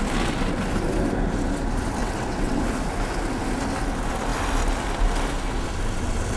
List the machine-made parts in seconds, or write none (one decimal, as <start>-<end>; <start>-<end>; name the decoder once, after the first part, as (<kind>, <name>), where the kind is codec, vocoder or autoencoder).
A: 2.0-2.6 (vocoder, WaveNeXt)